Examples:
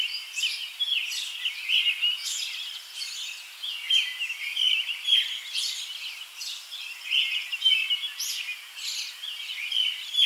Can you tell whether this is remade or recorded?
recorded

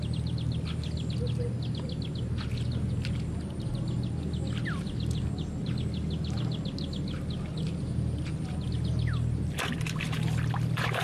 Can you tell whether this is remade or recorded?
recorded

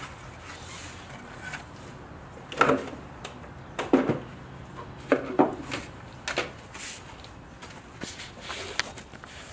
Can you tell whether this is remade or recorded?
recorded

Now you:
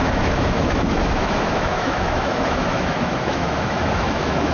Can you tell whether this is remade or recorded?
remade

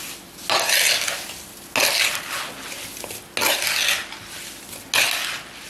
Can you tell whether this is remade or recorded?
recorded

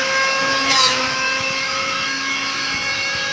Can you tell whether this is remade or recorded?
remade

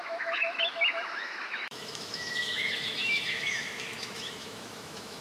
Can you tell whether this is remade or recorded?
remade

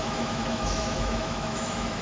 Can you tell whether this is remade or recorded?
remade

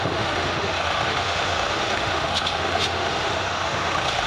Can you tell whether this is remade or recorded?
remade